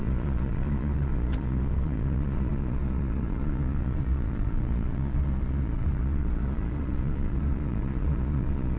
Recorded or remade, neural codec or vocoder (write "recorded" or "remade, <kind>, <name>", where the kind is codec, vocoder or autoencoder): remade, vocoder, Vocos